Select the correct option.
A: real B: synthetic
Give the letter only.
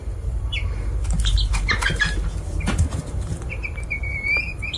B